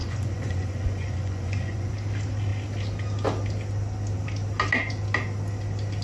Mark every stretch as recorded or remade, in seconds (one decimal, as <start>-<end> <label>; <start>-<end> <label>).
0.0-1.9 remade; 1.9-6.0 recorded